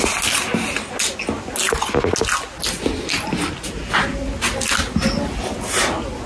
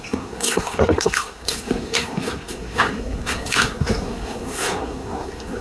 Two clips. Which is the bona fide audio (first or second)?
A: first